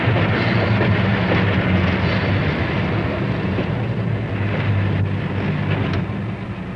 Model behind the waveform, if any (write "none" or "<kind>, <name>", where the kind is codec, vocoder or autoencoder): none